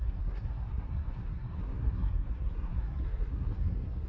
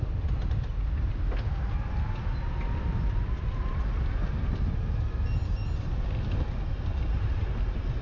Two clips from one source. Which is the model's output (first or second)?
first